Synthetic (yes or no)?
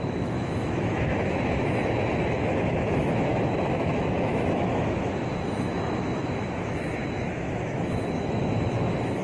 yes